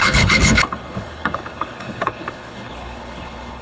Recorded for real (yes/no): no